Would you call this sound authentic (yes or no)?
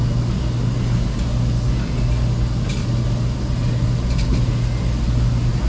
yes